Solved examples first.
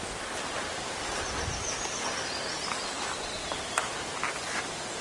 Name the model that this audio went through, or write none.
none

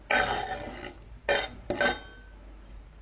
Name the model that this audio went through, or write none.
none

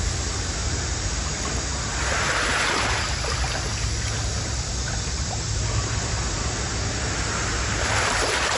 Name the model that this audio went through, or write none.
none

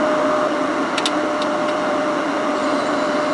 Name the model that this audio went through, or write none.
none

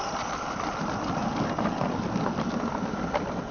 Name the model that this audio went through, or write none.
none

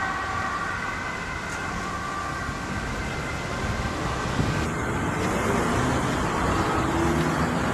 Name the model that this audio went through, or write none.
none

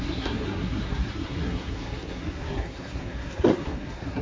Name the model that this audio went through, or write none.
codec, SNAC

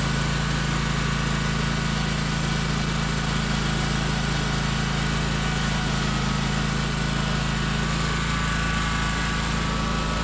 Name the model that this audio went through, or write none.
none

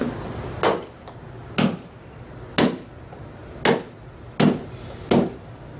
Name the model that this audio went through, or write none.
none